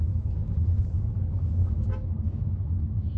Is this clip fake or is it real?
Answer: fake